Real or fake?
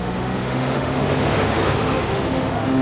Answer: fake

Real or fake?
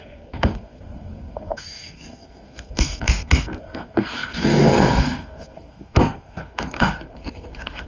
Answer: fake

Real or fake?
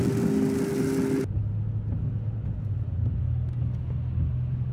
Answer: real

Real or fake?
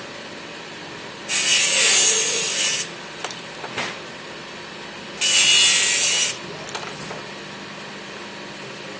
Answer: real